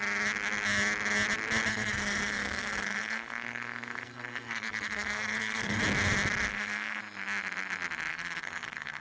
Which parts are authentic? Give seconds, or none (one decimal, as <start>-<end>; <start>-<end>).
0.0-1.7; 5.8-6.5; 7.0-8.1